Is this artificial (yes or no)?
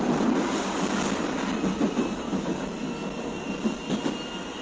no